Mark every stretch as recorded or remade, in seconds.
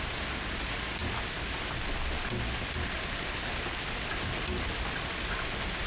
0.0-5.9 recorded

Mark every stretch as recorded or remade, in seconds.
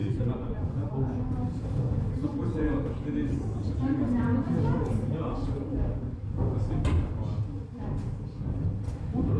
0.0-0.9 remade; 0.9-2.2 recorded; 2.2-2.8 remade; 2.8-9.4 recorded